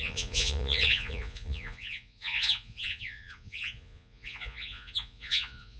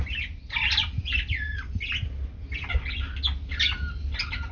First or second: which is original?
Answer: second